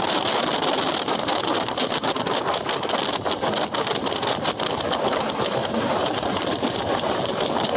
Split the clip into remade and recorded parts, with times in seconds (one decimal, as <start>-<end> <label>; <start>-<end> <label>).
0.0-5.6 recorded; 5.6-6.6 remade; 6.6-7.8 recorded

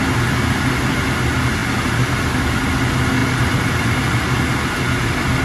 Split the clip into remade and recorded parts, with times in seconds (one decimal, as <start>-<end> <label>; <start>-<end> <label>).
0.0-3.2 recorded; 3.2-4.4 remade; 4.4-5.4 recorded

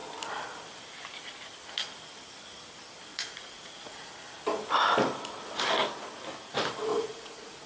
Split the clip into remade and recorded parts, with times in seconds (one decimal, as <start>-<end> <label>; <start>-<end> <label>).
0.0-3.1 recorded; 3.1-4.1 remade; 4.1-6.9 recorded; 6.9-7.7 remade

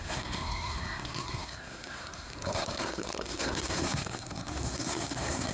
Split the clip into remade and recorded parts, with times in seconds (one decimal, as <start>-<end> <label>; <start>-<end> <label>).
0.0-5.5 remade